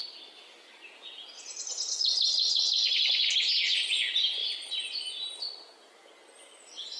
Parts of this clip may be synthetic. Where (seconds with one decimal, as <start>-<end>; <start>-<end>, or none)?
4.4-5.3